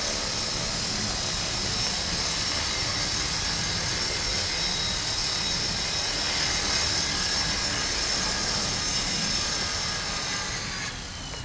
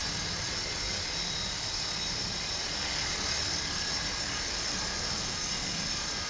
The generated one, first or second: second